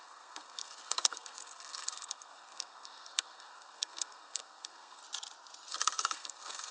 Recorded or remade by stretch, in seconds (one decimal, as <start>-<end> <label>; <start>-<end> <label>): 0.0-5.0 remade; 5.0-5.7 recorded; 5.7-6.7 remade